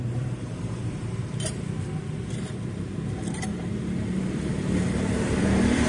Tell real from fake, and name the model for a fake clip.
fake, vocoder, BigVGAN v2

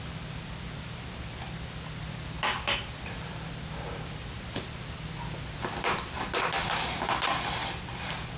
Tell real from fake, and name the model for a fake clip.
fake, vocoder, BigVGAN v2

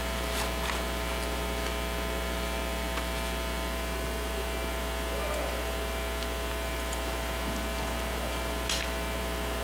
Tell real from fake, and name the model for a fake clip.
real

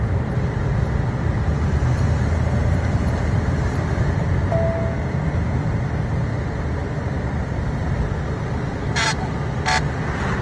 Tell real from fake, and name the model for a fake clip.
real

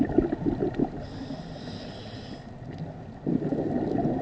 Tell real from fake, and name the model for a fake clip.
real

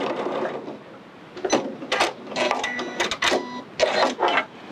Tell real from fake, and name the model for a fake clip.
real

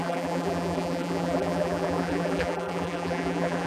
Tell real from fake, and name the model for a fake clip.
fake, vocoder, BigVGAN v2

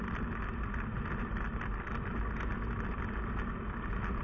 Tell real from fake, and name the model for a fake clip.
real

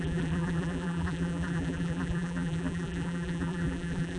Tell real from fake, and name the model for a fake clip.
fake, vocoder, BigVGAN v2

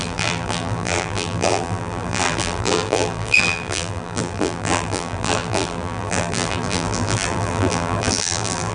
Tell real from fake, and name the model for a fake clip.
fake, vocoder, BigVGAN v2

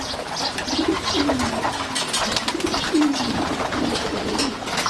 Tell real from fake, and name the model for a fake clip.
real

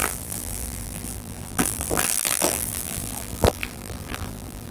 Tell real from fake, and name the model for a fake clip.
fake, vocoder, BigVGAN v2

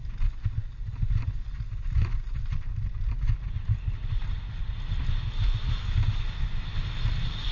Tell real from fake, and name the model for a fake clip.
real